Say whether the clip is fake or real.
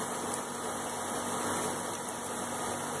real